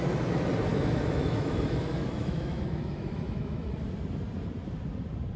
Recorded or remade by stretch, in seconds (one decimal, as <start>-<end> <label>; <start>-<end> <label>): 0.0-0.7 recorded; 0.7-3.7 remade; 3.7-5.4 recorded